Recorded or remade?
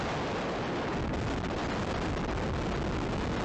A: recorded